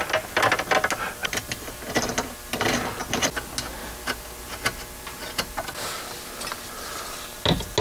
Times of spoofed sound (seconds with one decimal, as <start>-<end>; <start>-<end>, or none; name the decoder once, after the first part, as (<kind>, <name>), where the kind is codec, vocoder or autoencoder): 1.2-1.7 (vocoder, BigVGAN v2)